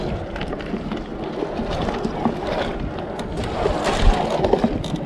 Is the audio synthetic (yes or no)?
no